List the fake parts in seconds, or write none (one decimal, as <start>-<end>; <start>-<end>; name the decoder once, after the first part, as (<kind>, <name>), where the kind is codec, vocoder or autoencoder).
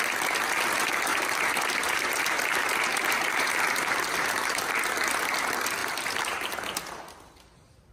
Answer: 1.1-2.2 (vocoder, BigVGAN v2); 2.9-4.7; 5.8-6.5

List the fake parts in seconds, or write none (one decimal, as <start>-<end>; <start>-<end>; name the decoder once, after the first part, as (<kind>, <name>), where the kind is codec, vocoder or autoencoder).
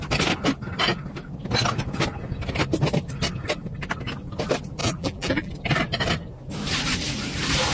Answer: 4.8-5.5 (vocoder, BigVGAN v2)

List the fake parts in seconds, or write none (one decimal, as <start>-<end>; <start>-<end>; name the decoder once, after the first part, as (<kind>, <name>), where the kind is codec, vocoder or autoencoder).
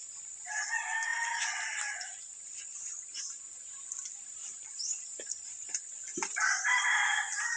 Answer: 4.1-5.6 (vocoder, BigVGAN v2)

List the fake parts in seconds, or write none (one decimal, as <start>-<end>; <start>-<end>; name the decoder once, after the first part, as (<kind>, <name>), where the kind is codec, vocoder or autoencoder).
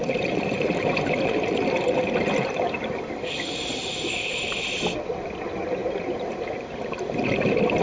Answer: 0.0-4.7 (vocoder, BigVGAN v2); 5.8-6.8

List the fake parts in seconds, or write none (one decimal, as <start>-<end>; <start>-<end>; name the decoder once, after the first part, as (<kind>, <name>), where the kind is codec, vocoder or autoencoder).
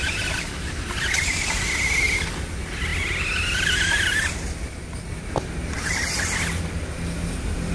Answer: 0.0-1.1 (vocoder, BigVGAN v2)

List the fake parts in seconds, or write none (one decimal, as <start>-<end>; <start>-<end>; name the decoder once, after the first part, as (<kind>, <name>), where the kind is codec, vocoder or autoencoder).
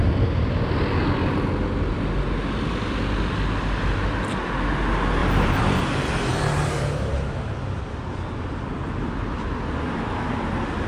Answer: 5.2-5.8 (vocoder, BigVGAN v2); 6.3-7.5